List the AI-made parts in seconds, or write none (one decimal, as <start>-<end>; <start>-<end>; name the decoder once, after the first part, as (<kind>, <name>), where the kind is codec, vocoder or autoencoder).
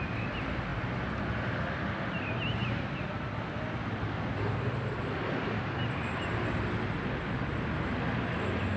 none